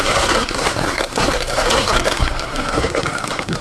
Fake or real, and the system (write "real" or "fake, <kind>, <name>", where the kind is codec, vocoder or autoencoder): fake, codec, SNAC